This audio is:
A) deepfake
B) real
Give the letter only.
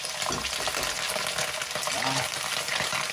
B